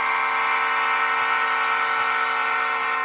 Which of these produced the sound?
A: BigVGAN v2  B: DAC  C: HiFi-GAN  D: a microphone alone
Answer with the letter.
D